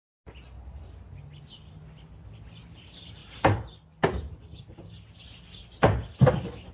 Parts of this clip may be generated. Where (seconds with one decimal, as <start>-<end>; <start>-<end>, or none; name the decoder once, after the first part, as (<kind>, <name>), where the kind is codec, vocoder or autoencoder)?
none